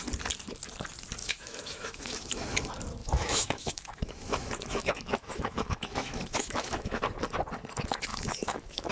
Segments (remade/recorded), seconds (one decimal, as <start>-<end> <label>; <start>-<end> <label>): 0.0-1.2 recorded; 1.2-2.4 remade; 2.4-3.0 recorded; 3.0-7.0 remade; 7.0-8.1 recorded; 8.1-8.9 remade

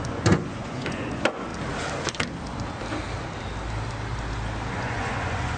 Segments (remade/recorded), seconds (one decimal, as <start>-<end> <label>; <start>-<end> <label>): 0.0-1.5 remade; 1.5-4.7 recorded; 4.7-5.6 remade

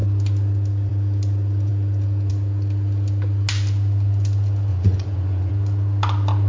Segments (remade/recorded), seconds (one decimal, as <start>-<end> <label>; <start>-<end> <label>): 0.0-4.7 recorded; 4.7-5.5 remade; 5.5-6.5 recorded

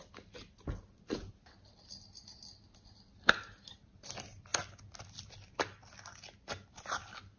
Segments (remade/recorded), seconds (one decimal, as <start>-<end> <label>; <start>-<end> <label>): 0.0-7.4 recorded

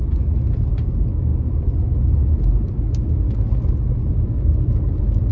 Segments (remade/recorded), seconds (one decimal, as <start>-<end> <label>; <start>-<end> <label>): 0.0-5.3 recorded

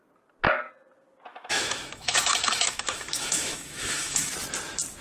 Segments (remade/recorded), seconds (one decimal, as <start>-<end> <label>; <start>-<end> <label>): 0.0-1.3 recorded; 1.3-4.3 remade; 4.3-5.0 recorded

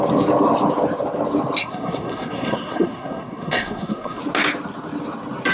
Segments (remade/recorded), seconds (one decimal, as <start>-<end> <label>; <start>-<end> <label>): 0.0-1.6 recorded; 1.6-4.2 remade; 4.2-5.5 recorded